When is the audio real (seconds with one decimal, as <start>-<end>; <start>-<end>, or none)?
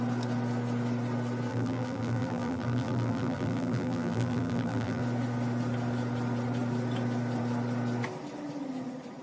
0.0-1.5; 5.0-9.2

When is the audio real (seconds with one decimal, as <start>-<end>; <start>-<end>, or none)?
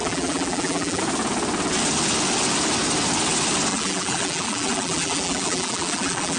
1.0-3.7